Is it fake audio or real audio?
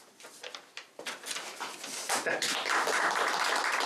fake